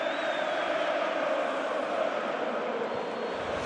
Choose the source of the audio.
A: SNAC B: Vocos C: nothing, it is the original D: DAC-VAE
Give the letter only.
C